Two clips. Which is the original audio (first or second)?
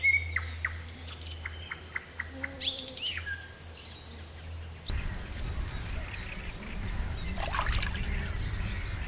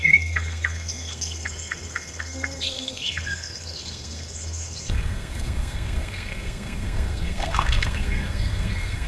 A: first